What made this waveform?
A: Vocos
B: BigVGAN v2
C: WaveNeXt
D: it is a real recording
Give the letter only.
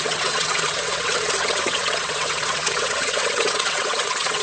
C